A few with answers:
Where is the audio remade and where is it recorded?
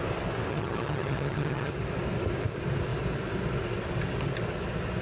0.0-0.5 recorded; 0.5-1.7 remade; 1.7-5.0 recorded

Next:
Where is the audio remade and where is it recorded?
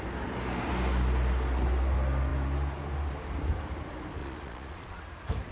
0.0-4.2 recorded; 4.2-5.0 remade; 5.0-5.5 recorded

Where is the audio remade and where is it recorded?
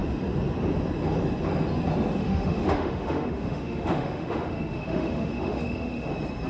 0.0-2.2 recorded; 2.2-6.1 remade; 6.1-6.5 recorded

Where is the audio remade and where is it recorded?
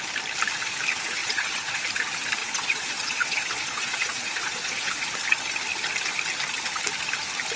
0.0-1.2 recorded; 1.2-1.8 remade; 1.8-2.4 recorded; 2.4-5.1 remade; 5.1-7.6 recorded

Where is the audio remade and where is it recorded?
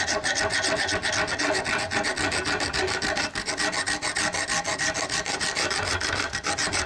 0.0-6.9 recorded